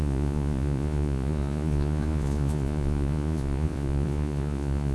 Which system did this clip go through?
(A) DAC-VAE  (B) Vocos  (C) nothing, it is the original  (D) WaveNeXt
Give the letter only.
B